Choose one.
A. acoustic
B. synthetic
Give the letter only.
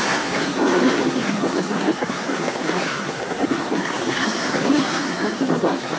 B